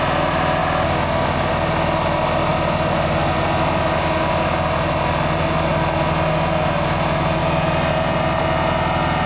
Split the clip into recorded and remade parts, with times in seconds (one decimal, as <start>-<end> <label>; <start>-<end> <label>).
0.0-9.3 recorded